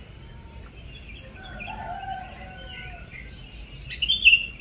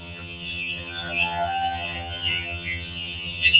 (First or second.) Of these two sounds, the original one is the first